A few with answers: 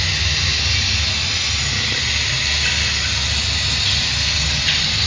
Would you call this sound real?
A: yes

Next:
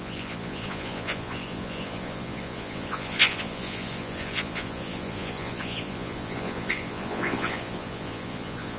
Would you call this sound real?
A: no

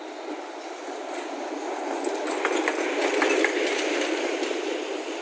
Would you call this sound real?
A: yes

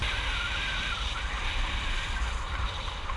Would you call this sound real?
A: yes